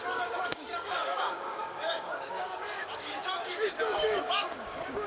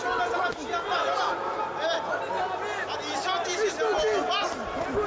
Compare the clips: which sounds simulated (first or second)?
first